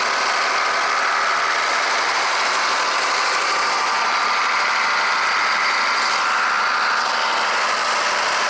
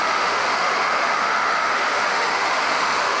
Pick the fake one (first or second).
second